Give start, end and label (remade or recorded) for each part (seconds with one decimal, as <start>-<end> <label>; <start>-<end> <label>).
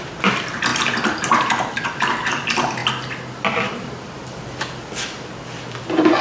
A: 0.0-6.2 recorded